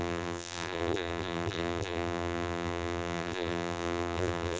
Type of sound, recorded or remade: remade